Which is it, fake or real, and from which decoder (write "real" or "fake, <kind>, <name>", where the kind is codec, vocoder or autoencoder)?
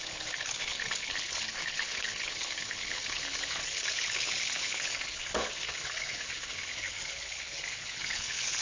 fake, codec, HILCodec